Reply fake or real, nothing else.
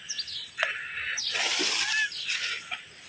real